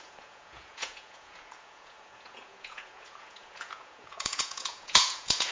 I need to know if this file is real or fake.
fake